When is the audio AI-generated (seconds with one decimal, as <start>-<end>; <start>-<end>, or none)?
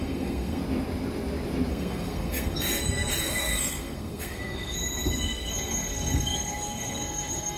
0.0-0.6; 1.7-7.6